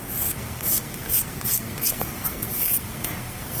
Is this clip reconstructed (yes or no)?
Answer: yes